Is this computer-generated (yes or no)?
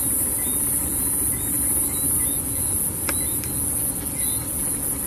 no